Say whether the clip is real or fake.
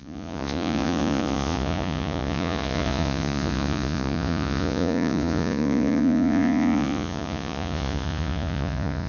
fake